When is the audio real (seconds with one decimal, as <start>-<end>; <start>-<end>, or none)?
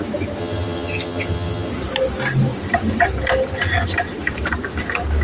0.0-0.4; 1.7-5.2